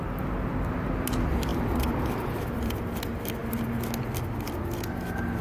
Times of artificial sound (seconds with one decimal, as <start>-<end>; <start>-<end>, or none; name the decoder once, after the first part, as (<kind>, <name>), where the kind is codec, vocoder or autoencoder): 1.5-2.9 (vocoder, BigVGAN v2)